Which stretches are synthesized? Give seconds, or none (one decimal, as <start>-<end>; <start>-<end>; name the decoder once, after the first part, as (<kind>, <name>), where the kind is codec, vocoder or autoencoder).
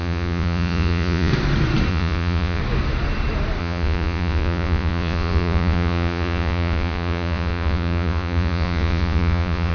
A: 0.0-1.3 (vocoder, Vocos); 1.9-2.6; 3.6-9.7